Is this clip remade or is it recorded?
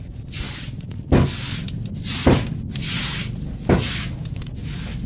recorded